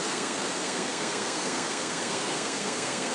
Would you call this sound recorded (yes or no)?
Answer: no